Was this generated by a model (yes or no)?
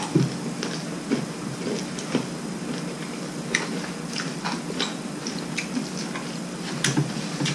no